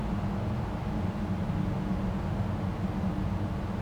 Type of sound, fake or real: real